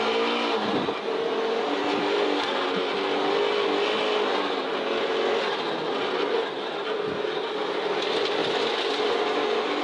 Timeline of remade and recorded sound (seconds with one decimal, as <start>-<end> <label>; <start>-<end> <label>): 0.0-9.8 recorded